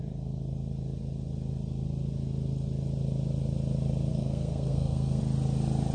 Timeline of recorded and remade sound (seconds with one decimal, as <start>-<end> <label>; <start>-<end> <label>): 0.0-4.1 recorded; 4.1-5.2 remade; 5.2-5.9 recorded